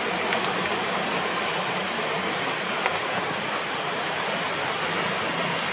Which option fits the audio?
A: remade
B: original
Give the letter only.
B